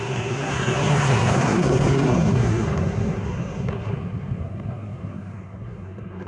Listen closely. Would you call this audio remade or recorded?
remade